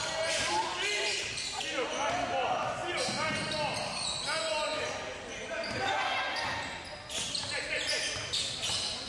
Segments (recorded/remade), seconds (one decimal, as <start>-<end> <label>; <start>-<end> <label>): 0.0-9.1 recorded